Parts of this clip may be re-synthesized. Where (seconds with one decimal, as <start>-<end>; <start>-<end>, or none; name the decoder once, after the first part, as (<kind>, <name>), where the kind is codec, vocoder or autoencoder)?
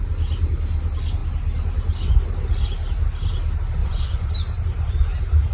3.8-4.3 (vocoder, Vocos)